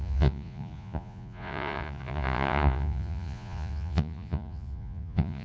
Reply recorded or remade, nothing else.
remade